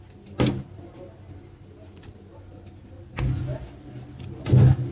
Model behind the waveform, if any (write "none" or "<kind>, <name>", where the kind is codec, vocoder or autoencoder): none